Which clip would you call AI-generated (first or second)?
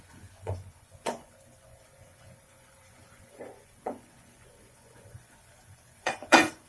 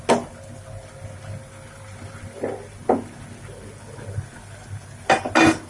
first